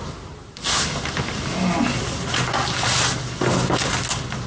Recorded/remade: recorded